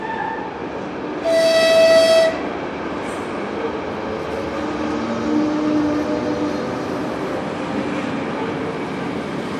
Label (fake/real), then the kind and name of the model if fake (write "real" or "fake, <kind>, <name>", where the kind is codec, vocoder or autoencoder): real